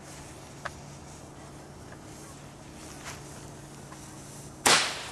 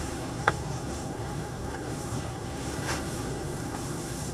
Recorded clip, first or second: first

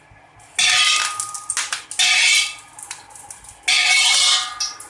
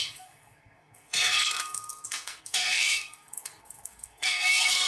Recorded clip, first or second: first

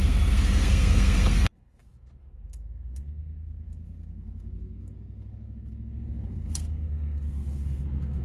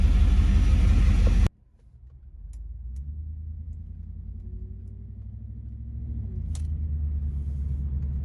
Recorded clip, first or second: second